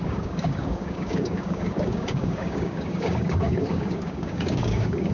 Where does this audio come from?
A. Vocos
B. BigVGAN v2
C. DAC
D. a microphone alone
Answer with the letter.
C